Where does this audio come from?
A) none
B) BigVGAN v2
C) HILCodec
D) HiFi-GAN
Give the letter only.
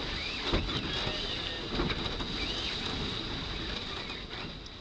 A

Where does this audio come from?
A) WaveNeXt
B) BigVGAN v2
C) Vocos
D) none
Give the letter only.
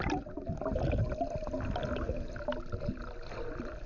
D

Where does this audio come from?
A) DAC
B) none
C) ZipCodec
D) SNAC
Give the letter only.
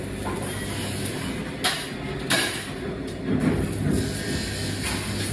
B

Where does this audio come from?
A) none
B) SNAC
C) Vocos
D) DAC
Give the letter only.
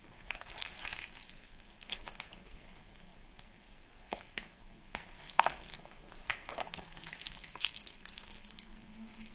B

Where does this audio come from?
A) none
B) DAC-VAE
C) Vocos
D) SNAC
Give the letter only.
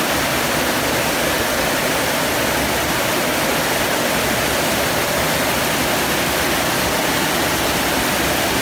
A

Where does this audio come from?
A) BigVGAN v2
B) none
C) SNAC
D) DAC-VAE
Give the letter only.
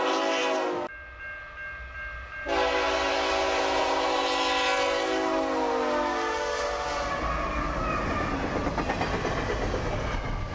B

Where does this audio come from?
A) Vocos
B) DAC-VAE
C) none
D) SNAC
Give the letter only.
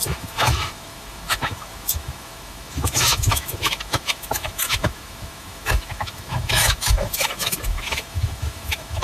B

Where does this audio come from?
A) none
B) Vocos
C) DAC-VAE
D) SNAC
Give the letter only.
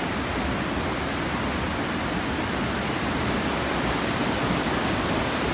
A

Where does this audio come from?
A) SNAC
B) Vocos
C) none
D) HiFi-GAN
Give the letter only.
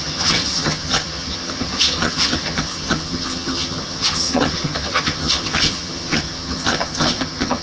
D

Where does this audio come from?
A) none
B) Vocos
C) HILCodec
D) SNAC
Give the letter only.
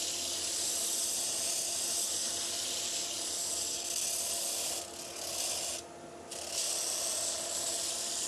A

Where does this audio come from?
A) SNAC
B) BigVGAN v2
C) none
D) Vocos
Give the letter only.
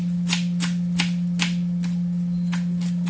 C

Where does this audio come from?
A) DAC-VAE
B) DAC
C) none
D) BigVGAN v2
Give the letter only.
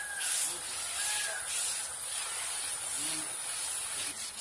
C